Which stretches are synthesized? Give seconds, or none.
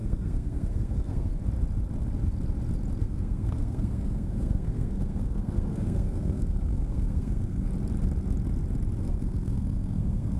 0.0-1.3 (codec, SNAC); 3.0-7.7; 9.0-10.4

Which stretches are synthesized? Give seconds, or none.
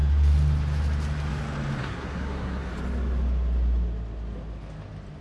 1.8-2.7 (codec, SNAC)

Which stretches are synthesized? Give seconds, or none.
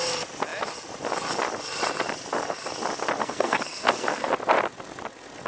3.2-4.3 (codec, SNAC)